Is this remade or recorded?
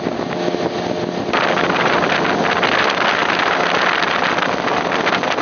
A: recorded